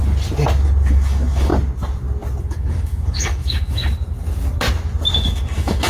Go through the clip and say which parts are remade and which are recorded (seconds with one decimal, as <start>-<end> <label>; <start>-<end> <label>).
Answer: 0.0-0.9 recorded; 0.9-1.5 remade; 1.5-2.4 recorded; 2.4-3.8 remade; 3.8-5.1 recorded; 5.1-5.9 remade